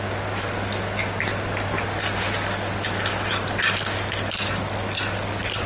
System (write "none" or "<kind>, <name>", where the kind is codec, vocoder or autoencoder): none